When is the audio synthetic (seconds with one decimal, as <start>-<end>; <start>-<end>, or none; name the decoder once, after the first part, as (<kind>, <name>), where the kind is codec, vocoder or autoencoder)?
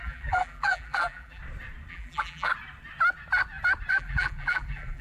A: 0.0-1.4 (vocoder, BigVGAN v2); 1.9-2.5; 3.9-5.0